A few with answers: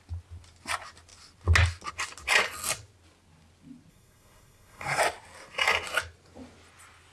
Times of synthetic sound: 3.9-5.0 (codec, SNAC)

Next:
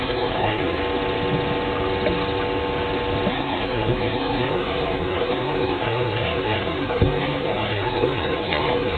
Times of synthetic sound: 0.0-0.8 (codec, SNAC); 3.3-9.0

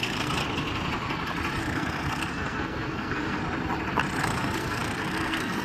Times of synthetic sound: 0.0-0.4 (codec, SNAC); 1.6-3.4; 4.2-5.6

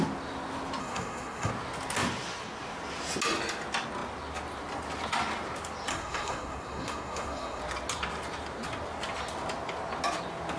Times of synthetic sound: 0.8-1.5 (codec, SNAC); 5.9-7.6

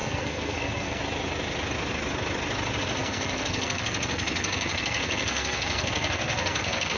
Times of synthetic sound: 0.0-1.0 (codec, SNAC); 3.0-7.0

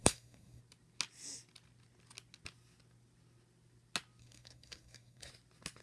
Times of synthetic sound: 0.0-0.6 (codec, SNAC); 4.2-5.3